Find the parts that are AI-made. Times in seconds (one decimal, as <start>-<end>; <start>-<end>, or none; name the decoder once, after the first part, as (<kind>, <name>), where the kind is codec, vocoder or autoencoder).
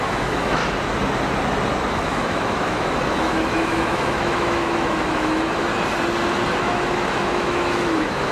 0.0-0.6 (autoencoder, DAC-VAE); 1.9-5.7; 6.6-8.3